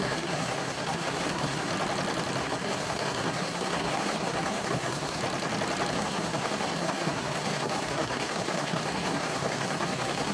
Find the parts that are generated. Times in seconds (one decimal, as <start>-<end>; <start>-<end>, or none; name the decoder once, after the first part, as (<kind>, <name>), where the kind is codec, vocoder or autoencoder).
0.0-1.7 (codec, SNAC); 2.4-5.2; 5.9-10.3

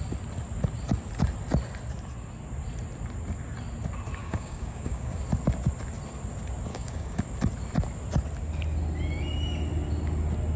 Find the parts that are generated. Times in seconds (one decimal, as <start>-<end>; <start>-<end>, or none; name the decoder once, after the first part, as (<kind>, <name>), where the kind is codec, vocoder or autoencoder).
4.2-5.2 (codec, DAC); 6.7-7.2

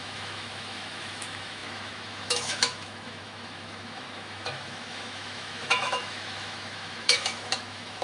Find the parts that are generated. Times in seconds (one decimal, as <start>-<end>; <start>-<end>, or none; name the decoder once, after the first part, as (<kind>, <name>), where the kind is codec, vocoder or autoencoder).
0.0-8.0 (autoencoder, DAC-VAE)